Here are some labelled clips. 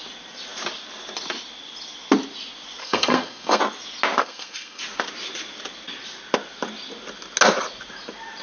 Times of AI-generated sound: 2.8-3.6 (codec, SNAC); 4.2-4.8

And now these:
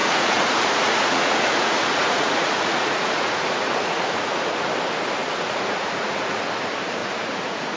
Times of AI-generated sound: 0.0-4.7 (vocoder, Vocos); 5.2-6.4; 7.0-7.8

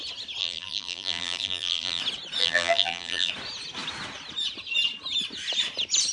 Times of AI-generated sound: 0.4-2.0 (vocoder, BigVGAN v2); 2.4-3.3

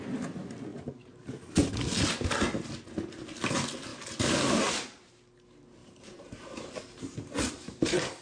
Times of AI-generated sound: 0.7-1.4 (vocoder, BigVGAN v2); 3.9-5.1; 5.8-6.8

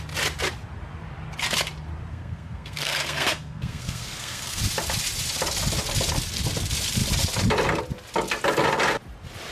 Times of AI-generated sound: 2.1-4.6 (codec, SNAC)

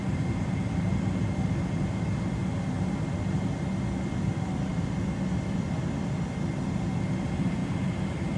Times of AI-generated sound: none